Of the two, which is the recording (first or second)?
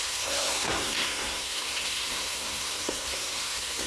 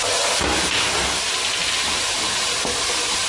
second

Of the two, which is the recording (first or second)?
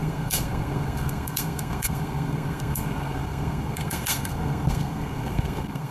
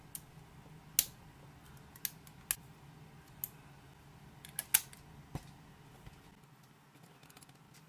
second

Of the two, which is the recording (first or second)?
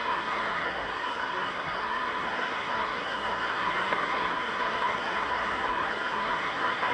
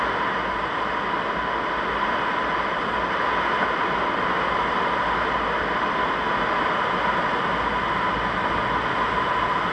second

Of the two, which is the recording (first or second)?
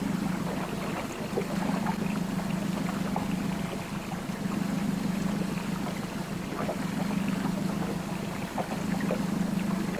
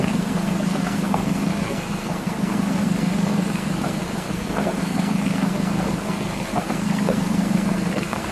first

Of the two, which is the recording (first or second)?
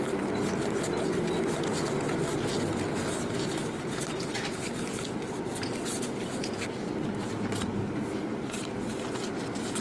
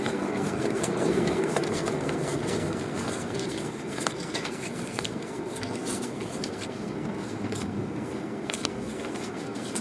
first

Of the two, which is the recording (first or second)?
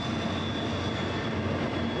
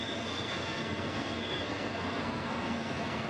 first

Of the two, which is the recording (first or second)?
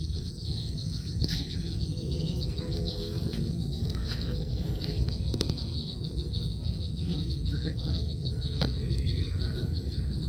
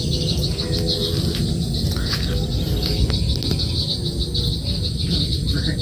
second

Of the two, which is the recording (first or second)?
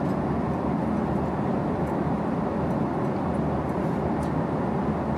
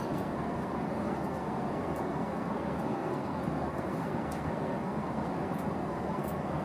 first